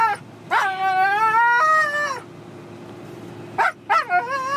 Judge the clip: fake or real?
real